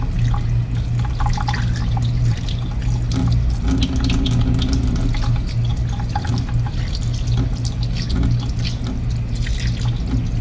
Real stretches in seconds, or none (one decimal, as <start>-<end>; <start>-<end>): 0.0-10.4